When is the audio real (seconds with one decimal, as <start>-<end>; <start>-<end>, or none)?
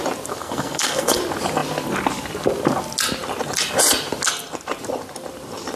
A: 0.0-0.4; 1.2-5.8